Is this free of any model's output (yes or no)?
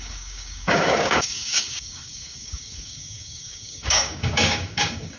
no